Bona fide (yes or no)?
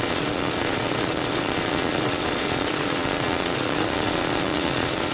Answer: no